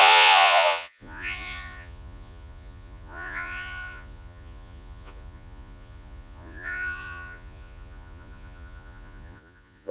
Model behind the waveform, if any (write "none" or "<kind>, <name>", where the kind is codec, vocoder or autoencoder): vocoder, Vocos